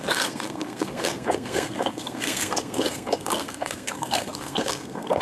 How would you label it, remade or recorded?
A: remade